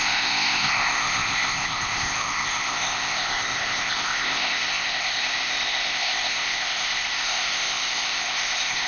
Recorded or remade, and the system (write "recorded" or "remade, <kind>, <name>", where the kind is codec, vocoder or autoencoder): remade, codec, ZipCodec